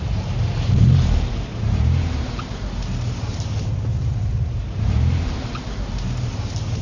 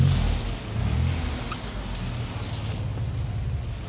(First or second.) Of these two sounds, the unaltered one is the second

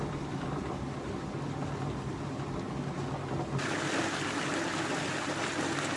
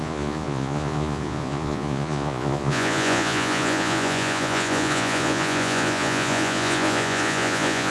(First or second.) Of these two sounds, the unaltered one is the first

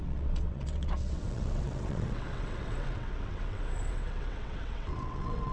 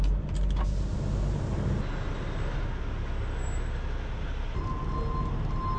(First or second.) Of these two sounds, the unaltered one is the second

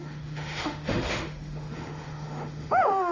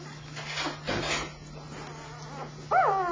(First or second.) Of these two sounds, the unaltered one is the second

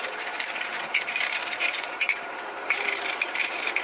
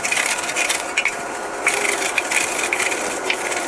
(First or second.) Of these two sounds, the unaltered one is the second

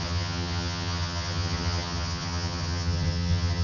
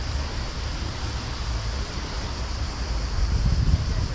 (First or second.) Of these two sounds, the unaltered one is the second